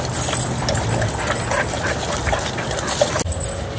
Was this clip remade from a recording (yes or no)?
no